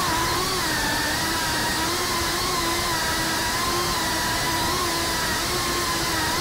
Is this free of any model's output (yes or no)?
yes